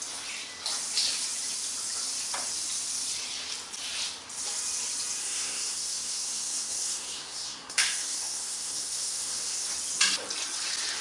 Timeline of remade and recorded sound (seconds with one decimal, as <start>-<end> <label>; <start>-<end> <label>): 0.0-5.2 recorded; 5.2-9.7 remade; 9.7-11.0 recorded